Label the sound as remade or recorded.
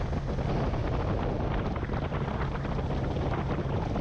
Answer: recorded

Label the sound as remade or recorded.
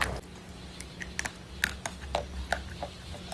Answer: recorded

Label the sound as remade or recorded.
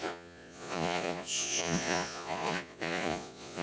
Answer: remade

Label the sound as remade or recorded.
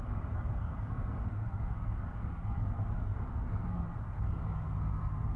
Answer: remade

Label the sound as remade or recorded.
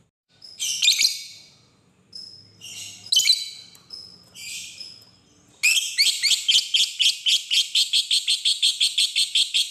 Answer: recorded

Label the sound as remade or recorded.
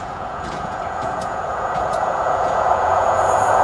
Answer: remade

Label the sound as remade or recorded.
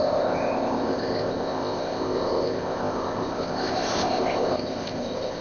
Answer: remade